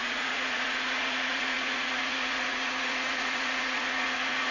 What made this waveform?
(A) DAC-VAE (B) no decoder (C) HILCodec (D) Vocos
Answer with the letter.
D